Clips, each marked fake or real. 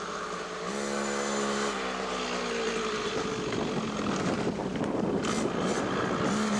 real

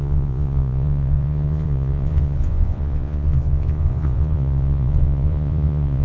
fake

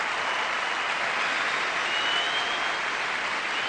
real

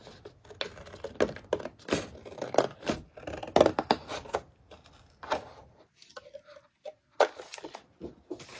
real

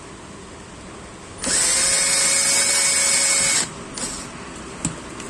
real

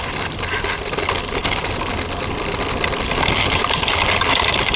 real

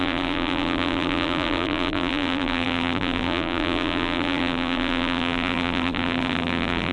fake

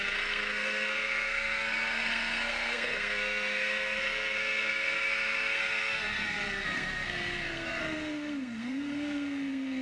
fake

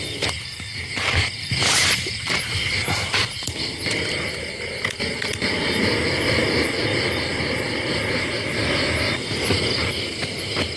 real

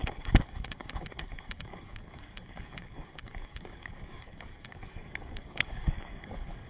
fake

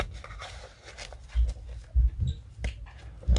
real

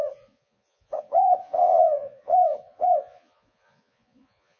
fake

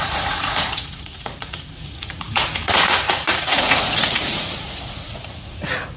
fake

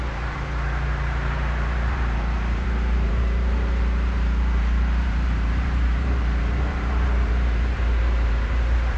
fake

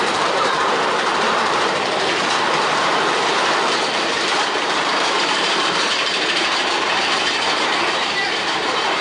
fake